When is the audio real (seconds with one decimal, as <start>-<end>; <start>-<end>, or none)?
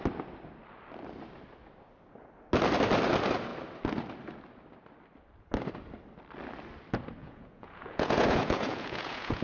0.0-7.2